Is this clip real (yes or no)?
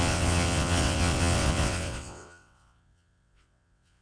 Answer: no